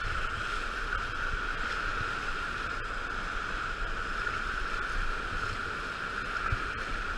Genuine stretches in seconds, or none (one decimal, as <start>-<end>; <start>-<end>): 0.0-7.2